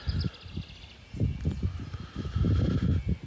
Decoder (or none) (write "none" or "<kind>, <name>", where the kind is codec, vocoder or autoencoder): none